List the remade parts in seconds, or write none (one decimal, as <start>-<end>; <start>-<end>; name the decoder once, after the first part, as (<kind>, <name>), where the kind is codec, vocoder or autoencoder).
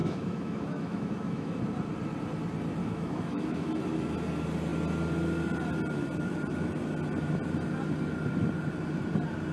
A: 0.0-1.6 (autoencoder, DAC-VAE); 2.8-3.7